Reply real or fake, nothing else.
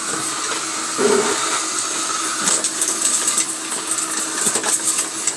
real